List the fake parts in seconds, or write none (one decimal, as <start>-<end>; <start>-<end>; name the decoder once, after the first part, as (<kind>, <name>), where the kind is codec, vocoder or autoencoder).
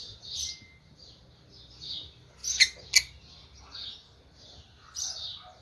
none